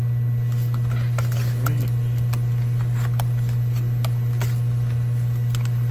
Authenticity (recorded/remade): recorded